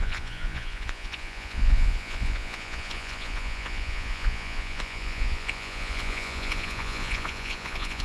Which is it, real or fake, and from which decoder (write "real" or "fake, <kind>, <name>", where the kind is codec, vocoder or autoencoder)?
fake, vocoder, Vocos